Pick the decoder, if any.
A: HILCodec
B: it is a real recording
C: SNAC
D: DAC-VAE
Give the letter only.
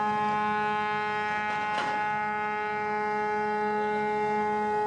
B